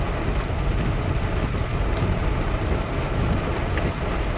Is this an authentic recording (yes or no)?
yes